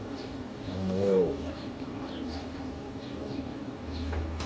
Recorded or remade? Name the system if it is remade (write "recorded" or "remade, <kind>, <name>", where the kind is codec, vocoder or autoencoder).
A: remade, codec, DAC